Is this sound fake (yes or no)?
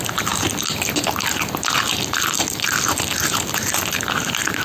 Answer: no